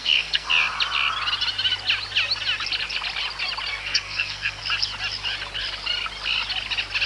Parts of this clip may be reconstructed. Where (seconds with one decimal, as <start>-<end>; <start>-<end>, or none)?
0.0-0.5; 3.7-4.6